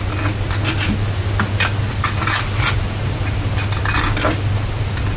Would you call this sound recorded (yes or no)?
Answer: yes